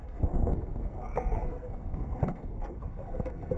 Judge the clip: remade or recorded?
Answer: remade